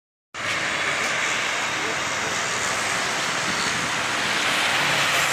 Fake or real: real